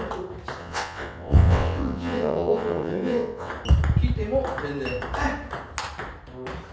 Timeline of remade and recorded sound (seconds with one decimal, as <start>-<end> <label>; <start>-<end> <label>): 0.0-0.6 recorded; 0.6-3.5 remade; 3.5-6.7 recorded